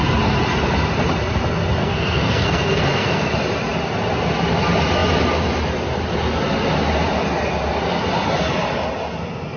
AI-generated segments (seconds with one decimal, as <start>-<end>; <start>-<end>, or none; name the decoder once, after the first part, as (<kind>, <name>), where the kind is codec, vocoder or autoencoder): 1.8-3.3 (codec, SNAC)